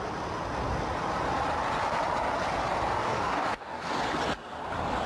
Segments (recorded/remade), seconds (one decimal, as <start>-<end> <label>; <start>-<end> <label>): 0.0-3.0 recorded; 3.0-3.9 remade; 3.9-5.1 recorded